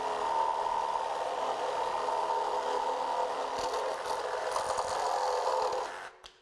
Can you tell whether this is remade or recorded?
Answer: recorded